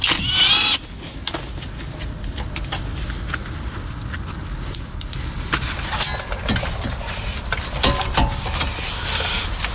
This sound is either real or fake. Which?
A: real